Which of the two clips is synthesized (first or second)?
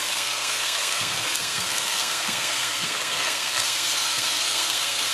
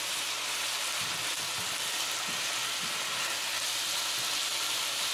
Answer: first